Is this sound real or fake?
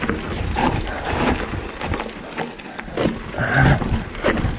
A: fake